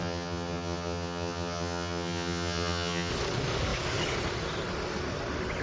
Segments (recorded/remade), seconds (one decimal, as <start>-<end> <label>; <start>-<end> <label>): 0.0-3.1 remade; 3.1-5.6 recorded

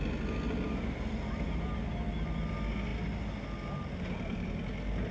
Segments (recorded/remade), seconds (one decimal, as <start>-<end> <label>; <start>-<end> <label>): 0.0-5.1 recorded

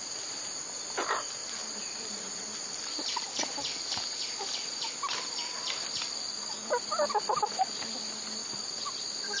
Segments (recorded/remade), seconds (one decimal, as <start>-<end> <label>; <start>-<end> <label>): 0.0-1.4 recorded; 1.4-4.8 remade; 4.8-9.4 recorded